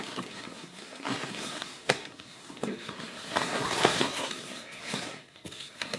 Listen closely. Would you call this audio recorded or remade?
remade